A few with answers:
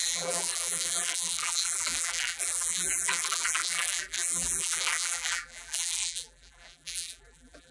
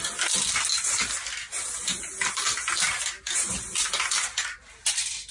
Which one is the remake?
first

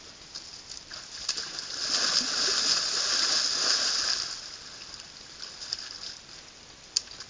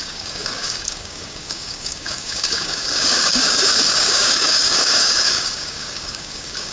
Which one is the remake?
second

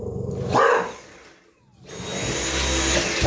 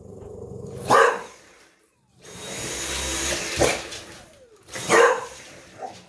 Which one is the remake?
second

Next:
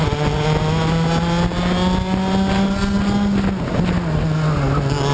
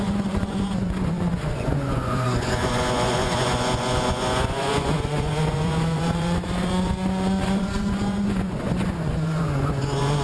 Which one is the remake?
second